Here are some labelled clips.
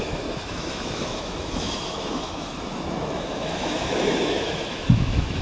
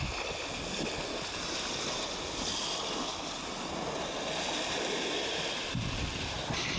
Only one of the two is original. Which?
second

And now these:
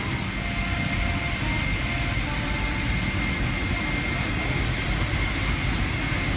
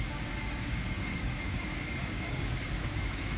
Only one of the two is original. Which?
first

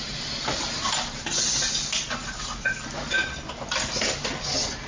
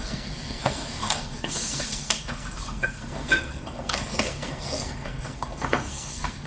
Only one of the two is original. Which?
first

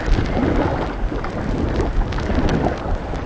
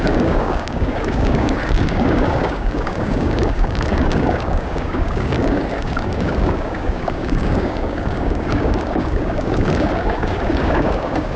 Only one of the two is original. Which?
first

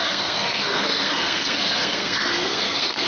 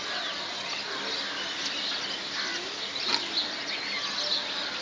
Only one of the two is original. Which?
second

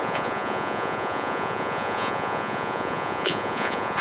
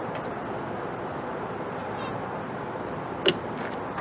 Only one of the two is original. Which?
second